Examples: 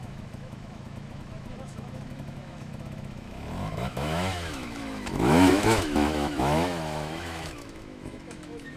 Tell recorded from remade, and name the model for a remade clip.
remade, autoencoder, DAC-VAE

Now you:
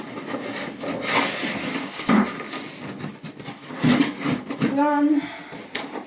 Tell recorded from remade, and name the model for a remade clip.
recorded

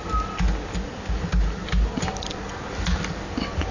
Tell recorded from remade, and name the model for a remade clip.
recorded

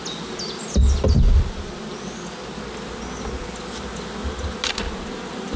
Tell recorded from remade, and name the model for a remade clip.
recorded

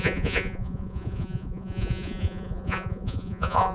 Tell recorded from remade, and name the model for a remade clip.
remade, vocoder, Vocos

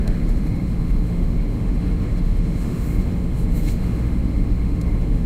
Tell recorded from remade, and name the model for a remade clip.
remade, autoencoder, DAC-VAE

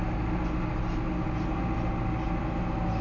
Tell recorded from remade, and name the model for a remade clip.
recorded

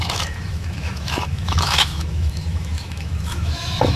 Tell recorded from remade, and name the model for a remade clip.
remade, autoencoder, DAC-VAE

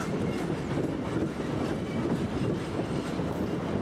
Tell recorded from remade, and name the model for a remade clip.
recorded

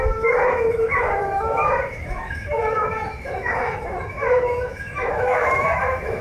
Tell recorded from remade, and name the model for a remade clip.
remade, autoencoder, DAC-VAE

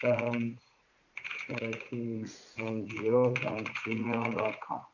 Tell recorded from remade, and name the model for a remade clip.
remade, vocoder, Vocos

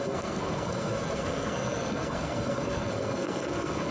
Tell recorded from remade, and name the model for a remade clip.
remade, codec, SNAC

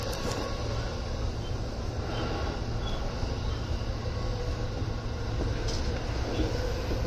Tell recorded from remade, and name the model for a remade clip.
recorded